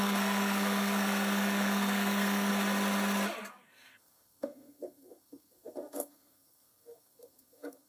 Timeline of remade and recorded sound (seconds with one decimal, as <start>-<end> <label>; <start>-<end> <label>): 0.0-2.5 remade; 2.5-3.5 recorded; 3.5-7.9 remade

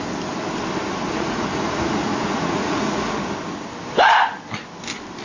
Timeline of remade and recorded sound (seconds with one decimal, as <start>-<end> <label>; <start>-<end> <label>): 0.0-1.1 recorded; 1.1-3.2 remade; 3.2-5.2 recorded

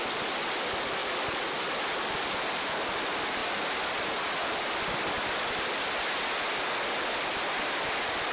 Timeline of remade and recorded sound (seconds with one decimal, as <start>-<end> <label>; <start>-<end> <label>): 0.0-1.0 recorded; 1.0-2.5 remade; 2.5-3.4 recorded; 3.4-7.7 remade; 7.7-8.3 recorded

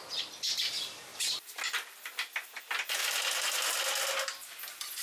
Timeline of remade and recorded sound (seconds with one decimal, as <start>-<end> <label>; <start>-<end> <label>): 0.0-1.1 recorded; 1.1-2.6 remade; 2.6-3.0 recorded; 3.0-4.1 remade; 4.1-5.0 recorded